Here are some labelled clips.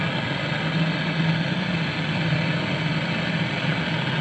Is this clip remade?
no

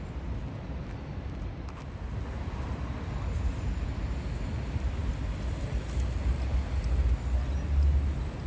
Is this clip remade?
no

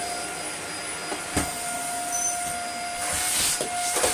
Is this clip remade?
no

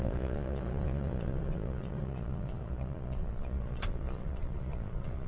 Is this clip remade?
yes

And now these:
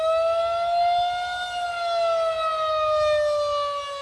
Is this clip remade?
no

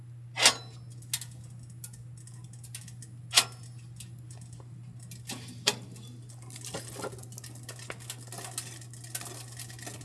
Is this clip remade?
no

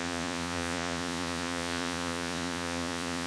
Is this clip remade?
yes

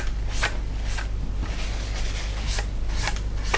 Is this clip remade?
no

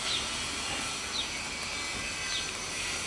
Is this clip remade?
no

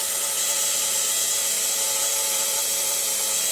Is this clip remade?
no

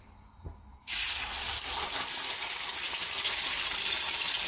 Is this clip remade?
no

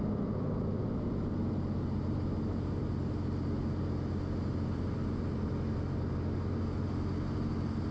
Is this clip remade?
no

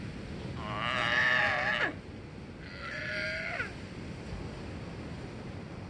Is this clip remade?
no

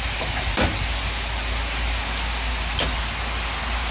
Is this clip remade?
no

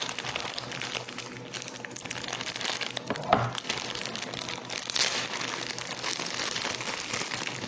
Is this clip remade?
no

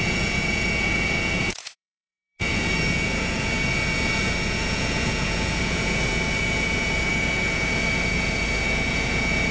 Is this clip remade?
yes